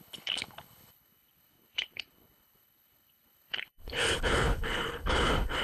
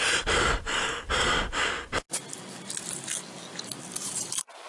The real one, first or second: second